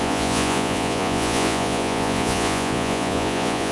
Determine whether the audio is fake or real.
fake